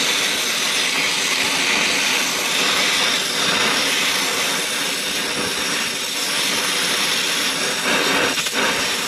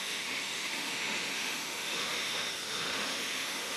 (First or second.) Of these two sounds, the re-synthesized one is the second